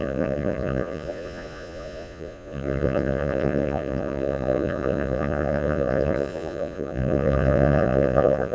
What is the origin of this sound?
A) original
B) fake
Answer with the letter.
B